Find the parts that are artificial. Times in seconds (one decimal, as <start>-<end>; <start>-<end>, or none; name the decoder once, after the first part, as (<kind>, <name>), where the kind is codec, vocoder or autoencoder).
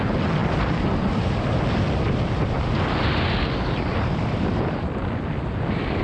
0.4-2.9 (vocoder, BigVGAN v2); 3.9-6.0